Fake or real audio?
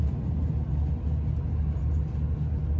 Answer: real